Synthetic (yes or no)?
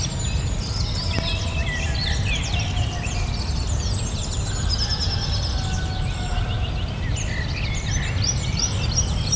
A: no